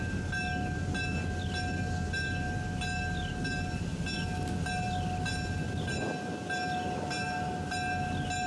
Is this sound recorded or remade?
recorded